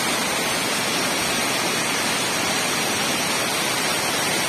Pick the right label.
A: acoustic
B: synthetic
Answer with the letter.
A